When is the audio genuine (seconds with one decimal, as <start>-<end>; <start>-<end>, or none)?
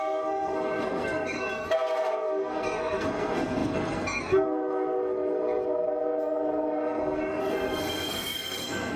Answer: none